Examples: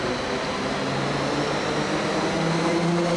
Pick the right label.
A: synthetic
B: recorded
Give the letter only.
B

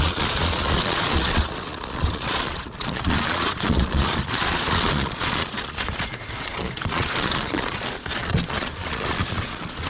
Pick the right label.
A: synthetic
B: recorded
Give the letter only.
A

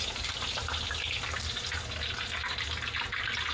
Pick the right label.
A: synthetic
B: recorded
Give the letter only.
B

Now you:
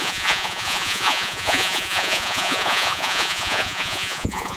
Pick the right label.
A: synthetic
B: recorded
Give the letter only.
A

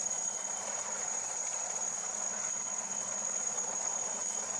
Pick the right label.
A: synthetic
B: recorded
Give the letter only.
A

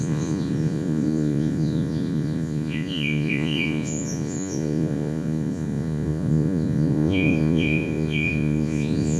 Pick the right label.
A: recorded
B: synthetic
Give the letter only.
B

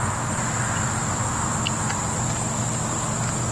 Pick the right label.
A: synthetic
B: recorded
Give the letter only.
B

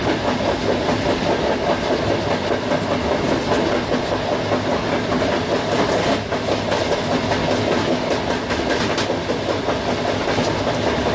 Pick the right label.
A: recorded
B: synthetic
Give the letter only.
A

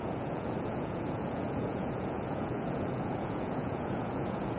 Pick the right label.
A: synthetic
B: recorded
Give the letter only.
A